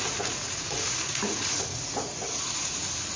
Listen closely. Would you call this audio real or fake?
fake